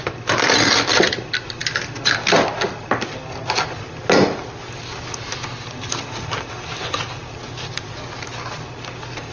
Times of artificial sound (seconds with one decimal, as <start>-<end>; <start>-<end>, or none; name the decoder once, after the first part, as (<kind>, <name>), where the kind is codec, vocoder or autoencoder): none